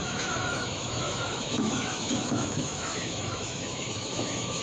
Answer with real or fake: fake